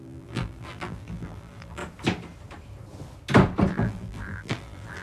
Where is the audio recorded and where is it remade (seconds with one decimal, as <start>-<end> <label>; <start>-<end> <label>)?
0.0-1.8 remade; 1.8-3.7 recorded; 3.7-5.0 remade